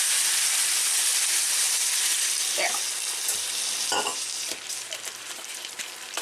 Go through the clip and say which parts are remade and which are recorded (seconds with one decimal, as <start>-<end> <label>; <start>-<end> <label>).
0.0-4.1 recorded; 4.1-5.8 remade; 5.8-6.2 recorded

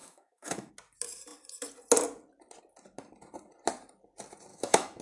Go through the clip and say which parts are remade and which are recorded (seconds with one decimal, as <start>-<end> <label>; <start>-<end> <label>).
0.0-0.7 remade; 0.7-4.5 recorded; 4.5-5.0 remade

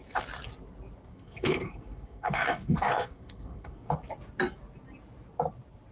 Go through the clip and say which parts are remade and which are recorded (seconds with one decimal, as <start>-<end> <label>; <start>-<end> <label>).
0.0-1.1 recorded; 1.1-3.9 remade; 3.9-5.9 recorded